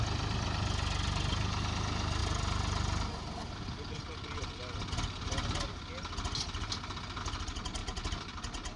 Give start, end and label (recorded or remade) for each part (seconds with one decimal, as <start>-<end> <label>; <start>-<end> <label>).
0.0-8.8 recorded